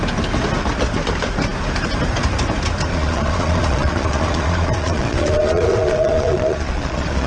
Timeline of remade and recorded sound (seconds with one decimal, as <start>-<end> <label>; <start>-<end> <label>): 0.0-2.9 recorded; 2.9-7.3 remade